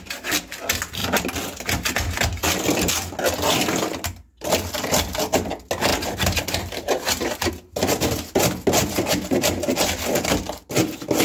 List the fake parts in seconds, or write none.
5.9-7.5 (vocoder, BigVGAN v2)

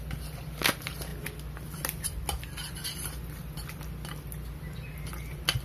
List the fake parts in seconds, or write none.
none

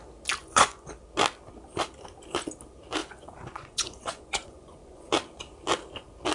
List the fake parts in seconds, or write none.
0.4-0.9 (vocoder, Vocos); 3.0-5.1

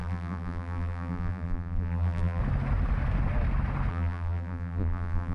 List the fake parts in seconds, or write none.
0.0-2.4 (vocoder, BigVGAN v2); 3.9-5.3

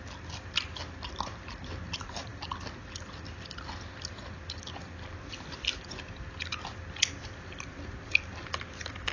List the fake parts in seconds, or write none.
none